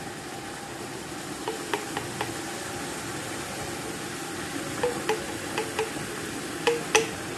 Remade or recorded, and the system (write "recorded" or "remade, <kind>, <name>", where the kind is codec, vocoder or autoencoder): recorded